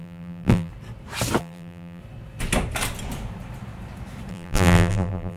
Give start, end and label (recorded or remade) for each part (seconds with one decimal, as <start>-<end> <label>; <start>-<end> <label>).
0.0-0.7 remade; 0.7-1.4 recorded; 1.4-2.0 remade; 2.0-4.3 recorded; 4.3-5.4 remade